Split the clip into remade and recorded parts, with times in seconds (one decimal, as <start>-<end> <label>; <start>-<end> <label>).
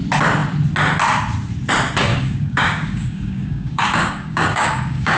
0.0-2.1 recorded; 2.1-5.2 remade